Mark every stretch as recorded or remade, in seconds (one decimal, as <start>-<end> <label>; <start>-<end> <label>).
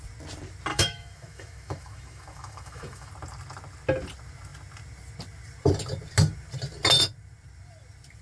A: 0.0-0.7 recorded; 0.7-3.1 remade; 3.1-8.2 recorded